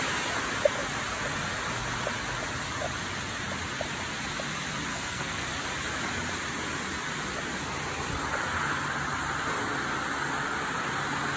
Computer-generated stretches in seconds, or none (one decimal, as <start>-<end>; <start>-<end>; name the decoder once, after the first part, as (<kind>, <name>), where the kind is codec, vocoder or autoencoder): 4.9-5.4 (codec, SNAC)